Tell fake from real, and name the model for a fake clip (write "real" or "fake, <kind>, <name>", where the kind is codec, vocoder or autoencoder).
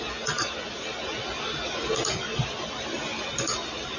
real